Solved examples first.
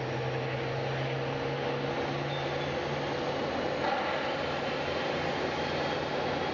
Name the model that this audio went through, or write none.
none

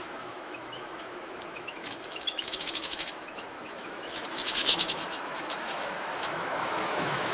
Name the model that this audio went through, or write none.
autoencoder, DAC-VAE